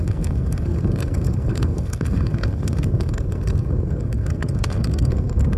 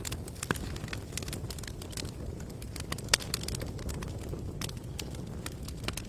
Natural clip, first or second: second